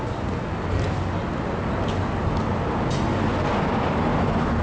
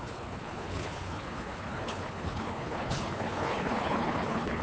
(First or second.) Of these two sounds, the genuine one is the first